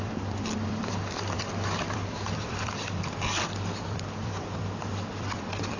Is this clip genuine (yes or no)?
no